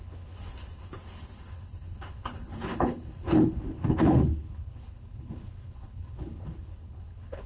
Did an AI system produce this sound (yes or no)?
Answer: yes